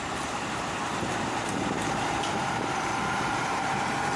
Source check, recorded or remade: remade